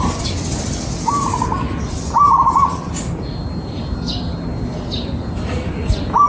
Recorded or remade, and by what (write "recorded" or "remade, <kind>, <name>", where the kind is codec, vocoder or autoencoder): recorded